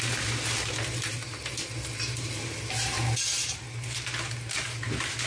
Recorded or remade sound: recorded